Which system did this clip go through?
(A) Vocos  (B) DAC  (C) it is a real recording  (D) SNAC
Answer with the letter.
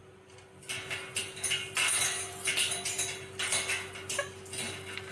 C